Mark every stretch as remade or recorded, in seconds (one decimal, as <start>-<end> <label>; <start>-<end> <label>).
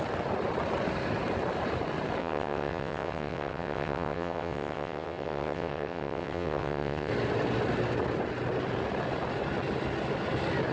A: 0.0-2.2 recorded; 2.2-7.1 remade; 7.1-10.7 recorded